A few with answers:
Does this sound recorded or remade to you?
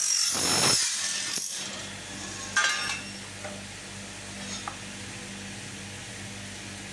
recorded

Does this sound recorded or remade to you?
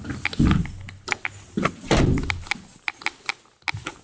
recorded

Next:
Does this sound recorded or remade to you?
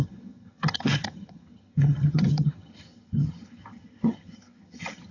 remade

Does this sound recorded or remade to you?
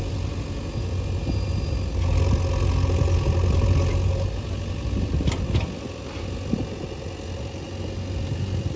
recorded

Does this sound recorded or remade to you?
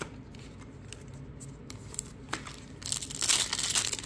recorded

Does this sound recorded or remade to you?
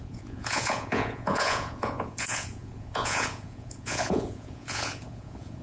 remade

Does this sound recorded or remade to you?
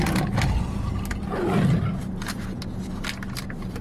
remade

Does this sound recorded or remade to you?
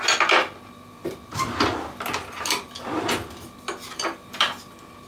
recorded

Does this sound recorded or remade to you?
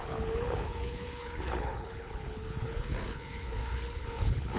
remade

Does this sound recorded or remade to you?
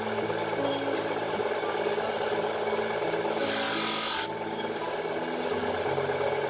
recorded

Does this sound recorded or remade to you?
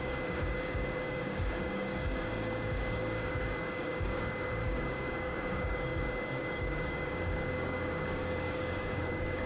remade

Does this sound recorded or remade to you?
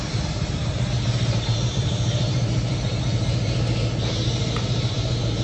remade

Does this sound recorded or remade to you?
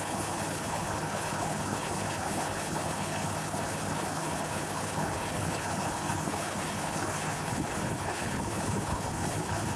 remade